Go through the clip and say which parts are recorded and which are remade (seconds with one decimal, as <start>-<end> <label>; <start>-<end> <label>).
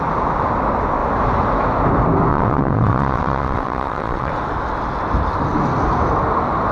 0.0-2.3 recorded; 2.3-4.3 remade; 4.3-6.7 recorded